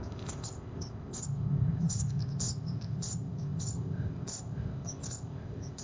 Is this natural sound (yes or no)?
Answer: no